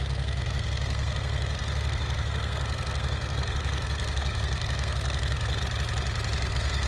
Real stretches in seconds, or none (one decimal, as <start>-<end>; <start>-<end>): 5.6-6.5